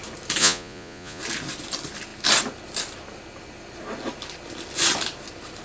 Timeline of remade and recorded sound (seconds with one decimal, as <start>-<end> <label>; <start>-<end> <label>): 0.0-0.4 recorded; 0.4-1.2 remade; 1.2-5.6 recorded